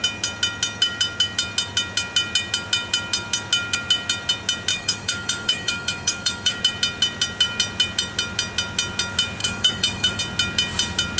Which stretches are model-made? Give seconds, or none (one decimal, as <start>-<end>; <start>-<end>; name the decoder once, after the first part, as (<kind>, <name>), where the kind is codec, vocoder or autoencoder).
4.7-6.6 (autoencoder, DAC-VAE); 9.4-10.2